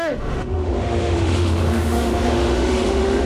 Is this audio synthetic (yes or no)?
yes